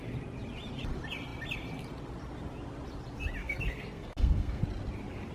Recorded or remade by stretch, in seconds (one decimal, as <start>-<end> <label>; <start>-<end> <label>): 0.0-3.4 recorded; 3.4-4.6 remade; 4.6-5.3 recorded